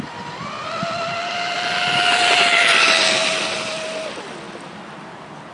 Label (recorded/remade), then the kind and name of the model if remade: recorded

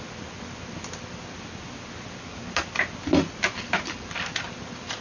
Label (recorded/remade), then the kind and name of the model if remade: recorded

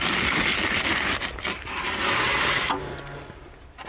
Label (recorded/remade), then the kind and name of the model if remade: recorded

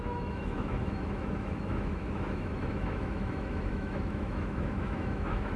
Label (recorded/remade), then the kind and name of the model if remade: remade, autoencoder, DAC-VAE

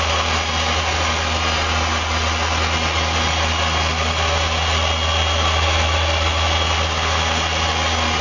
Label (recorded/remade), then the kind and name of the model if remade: recorded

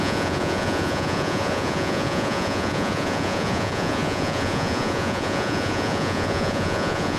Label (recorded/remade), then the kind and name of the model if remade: remade, vocoder, Vocos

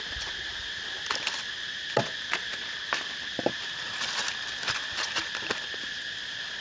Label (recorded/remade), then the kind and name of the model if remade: recorded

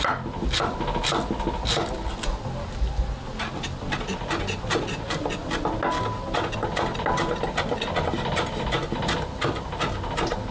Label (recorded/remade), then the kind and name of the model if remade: recorded